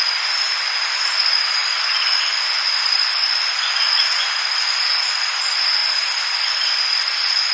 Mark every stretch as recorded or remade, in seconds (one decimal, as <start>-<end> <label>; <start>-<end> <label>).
0.0-1.6 recorded; 1.6-4.1 remade; 4.1-5.8 recorded; 5.8-7.0 remade; 7.0-7.5 recorded